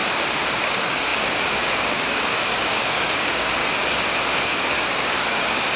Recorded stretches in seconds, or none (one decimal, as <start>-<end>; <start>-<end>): 0.0-0.6; 3.6-4.4